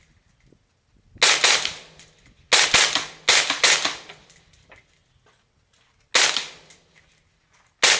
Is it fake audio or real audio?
real